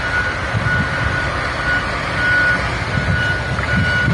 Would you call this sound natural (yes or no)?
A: yes